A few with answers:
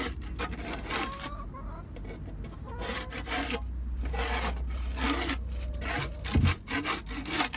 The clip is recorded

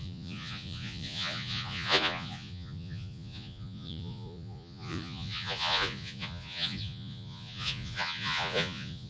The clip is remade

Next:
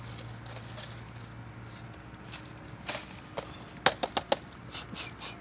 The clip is recorded